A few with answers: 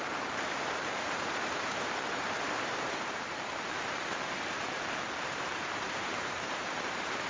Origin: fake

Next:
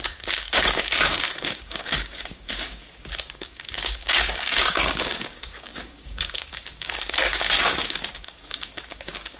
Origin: fake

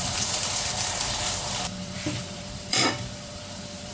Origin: fake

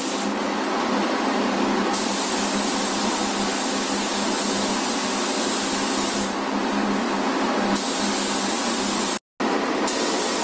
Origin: real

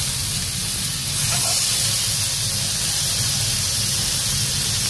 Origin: real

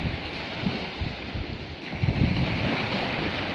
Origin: real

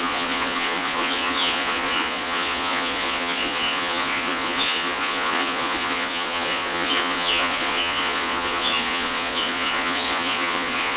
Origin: fake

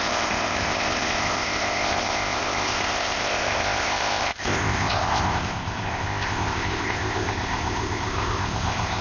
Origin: fake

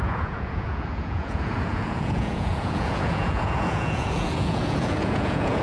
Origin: fake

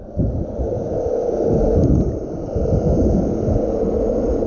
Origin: real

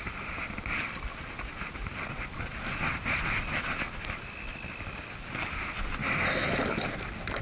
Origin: real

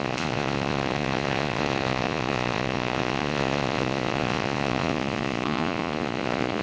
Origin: fake